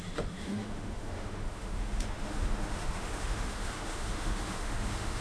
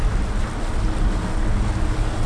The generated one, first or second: first